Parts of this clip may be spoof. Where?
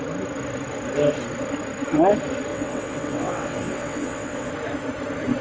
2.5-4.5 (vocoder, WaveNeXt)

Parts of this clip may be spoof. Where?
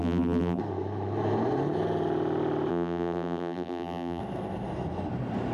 0.0-0.6 (vocoder, BigVGAN v2); 2.7-4.2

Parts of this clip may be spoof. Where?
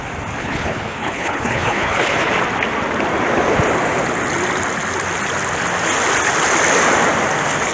0.4-2.3 (codec, HILCodec)